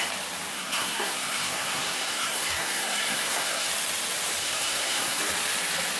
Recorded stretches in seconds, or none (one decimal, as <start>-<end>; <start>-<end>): 0.0-0.5; 3.7-4.4; 5.2-6.0